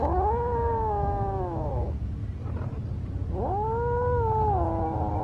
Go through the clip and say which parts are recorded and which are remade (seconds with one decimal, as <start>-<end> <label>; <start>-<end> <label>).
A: 0.0-2.2 remade; 2.2-5.2 recorded

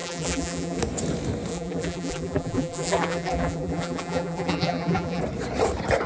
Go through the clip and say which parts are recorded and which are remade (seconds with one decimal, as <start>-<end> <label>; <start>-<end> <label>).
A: 0.0-0.8 remade; 0.8-1.5 recorded; 1.5-5.2 remade; 5.2-6.1 recorded

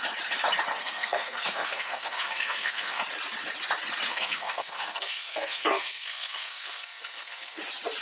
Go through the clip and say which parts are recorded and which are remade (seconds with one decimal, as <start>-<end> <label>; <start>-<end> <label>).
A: 0.0-0.8 recorded; 0.8-3.0 remade; 3.0-4.1 recorded; 4.1-7.6 remade; 7.6-8.0 recorded

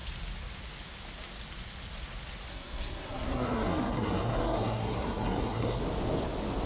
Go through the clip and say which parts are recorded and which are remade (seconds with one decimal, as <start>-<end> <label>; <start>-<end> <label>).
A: 0.0-2.5 recorded; 2.5-5.8 remade; 5.8-6.7 recorded

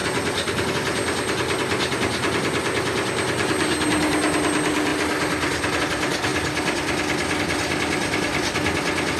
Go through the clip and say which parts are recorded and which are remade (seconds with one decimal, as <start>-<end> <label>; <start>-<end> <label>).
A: 0.0-0.7 remade; 0.7-9.2 recorded

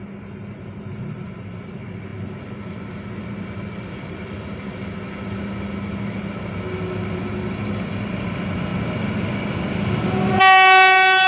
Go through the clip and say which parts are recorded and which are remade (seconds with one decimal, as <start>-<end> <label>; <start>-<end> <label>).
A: 0.0-11.3 recorded

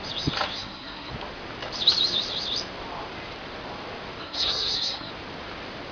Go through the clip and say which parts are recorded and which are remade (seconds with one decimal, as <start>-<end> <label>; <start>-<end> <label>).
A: 0.0-0.5 recorded; 0.5-1.1 remade; 1.1-4.2 recorded; 4.2-5.1 remade; 5.1-5.9 recorded